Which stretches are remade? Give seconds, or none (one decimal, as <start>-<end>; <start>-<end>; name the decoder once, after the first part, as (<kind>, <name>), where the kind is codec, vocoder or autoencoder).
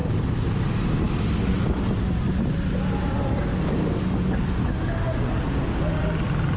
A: none